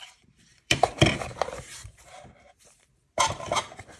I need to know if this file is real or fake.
fake